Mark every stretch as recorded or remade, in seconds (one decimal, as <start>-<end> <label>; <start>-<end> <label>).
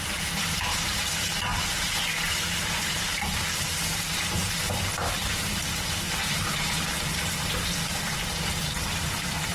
0.0-9.5 remade